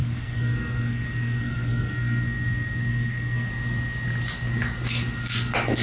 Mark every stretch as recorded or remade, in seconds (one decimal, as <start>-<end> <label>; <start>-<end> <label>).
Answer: 0.0-3.5 remade; 3.5-5.8 recorded